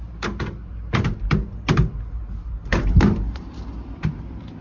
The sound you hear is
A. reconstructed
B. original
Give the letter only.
A